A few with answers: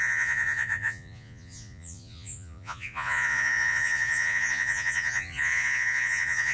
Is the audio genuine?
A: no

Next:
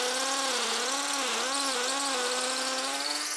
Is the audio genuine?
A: yes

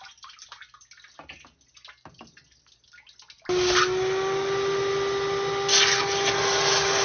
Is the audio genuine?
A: yes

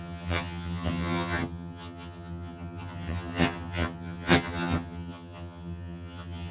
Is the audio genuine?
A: no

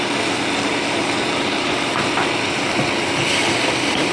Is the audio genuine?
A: no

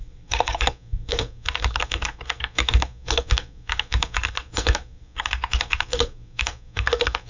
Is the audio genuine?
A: no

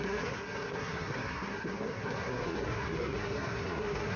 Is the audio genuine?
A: no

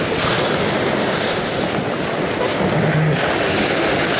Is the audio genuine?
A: yes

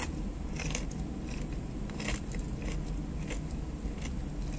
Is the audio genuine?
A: yes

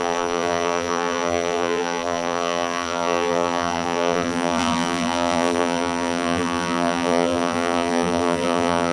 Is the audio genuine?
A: no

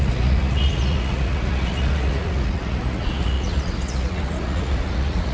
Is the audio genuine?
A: no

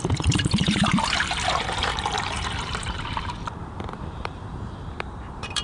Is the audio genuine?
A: no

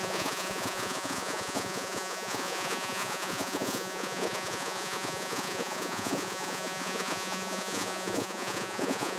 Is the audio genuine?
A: no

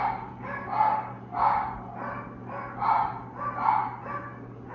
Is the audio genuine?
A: yes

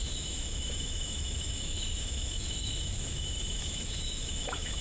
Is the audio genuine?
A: no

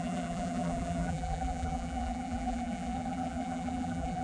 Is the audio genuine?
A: no